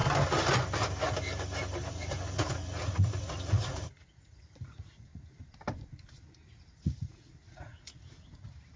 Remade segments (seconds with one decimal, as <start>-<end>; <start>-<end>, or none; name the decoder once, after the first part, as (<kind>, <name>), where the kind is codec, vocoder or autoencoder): 1.9-5.1 (vocoder, Vocos); 6.7-8.8